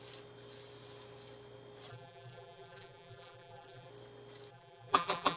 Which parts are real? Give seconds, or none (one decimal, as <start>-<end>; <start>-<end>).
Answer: 0.0-1.9; 3.9-4.5